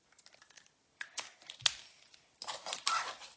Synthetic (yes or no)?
no